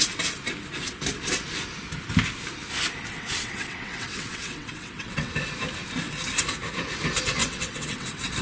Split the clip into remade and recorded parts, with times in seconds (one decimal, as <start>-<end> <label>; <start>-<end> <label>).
0.0-3.1 recorded; 3.1-5.3 remade; 5.3-7.4 recorded; 7.4-8.4 remade